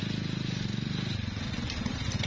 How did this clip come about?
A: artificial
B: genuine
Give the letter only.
B